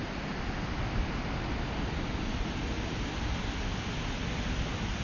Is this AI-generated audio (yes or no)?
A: no